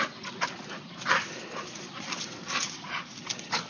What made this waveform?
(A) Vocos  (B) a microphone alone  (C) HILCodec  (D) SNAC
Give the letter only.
B